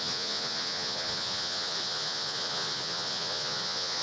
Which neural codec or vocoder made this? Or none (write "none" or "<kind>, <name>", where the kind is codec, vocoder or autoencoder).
vocoder, Vocos